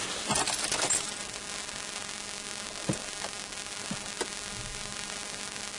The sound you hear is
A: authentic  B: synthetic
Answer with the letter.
A